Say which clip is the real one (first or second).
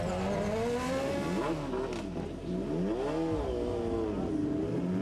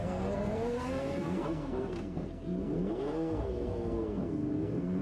first